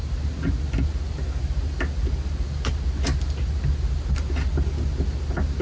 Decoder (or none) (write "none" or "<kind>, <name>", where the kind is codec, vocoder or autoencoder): none